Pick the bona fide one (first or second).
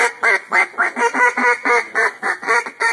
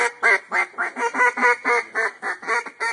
second